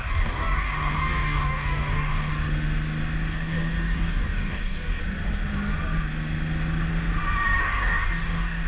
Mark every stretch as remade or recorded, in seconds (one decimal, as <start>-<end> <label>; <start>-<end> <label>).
0.0-2.3 remade; 2.3-3.3 recorded; 3.3-5.0 remade; 5.0-7.6 recorded; 7.6-8.7 remade